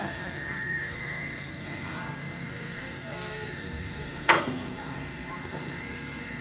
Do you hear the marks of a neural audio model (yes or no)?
yes